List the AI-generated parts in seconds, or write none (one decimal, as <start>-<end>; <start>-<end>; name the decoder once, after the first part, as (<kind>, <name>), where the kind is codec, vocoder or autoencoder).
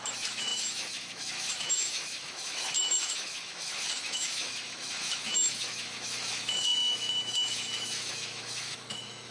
0.0-9.3 (autoencoder, DAC-VAE)